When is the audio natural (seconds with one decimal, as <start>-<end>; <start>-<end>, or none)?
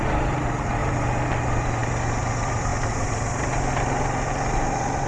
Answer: 0.0-5.1